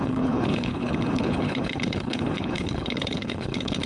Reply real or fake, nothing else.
fake